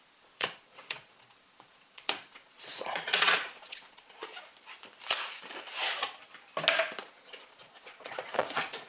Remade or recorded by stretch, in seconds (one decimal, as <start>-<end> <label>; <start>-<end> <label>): 0.0-4.3 remade; 4.3-7.0 recorded; 7.0-8.9 remade